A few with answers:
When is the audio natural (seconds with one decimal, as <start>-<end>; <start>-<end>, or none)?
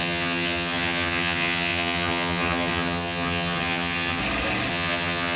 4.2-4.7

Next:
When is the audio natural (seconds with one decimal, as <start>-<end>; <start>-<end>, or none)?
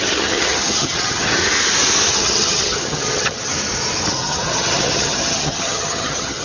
1.4-2.1; 3.5-4.1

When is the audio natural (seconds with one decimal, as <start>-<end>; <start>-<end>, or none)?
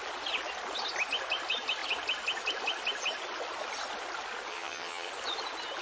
0.0-4.5; 5.1-5.8